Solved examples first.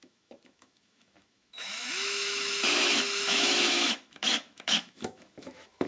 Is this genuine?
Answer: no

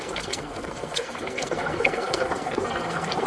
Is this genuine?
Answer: no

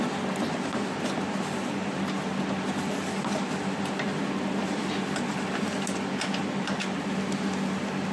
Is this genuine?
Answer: yes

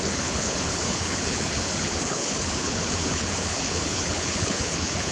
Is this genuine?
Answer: no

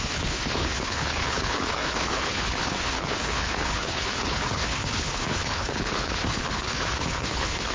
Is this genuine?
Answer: no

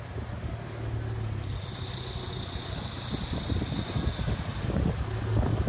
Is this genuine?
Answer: yes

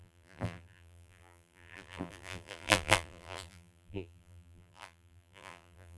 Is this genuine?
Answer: no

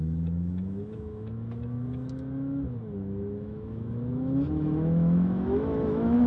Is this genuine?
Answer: no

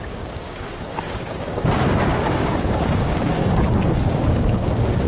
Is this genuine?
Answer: no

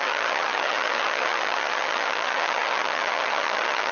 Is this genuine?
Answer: no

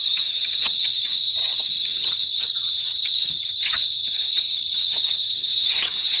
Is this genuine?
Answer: no